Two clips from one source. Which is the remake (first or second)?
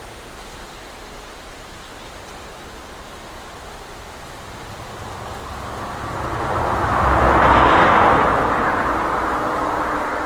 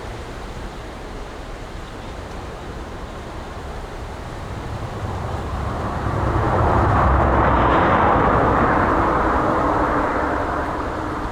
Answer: second